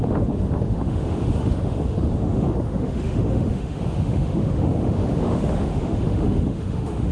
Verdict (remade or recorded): remade